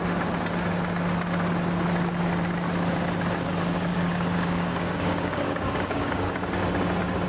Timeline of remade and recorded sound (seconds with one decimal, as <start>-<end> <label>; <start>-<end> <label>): 0.0-3.9 recorded; 3.9-6.3 remade; 6.3-7.3 recorded